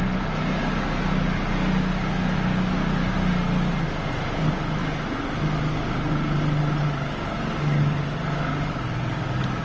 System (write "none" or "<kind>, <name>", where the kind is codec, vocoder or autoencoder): none